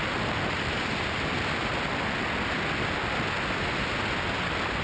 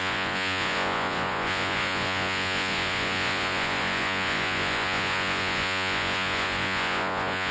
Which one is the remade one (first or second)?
second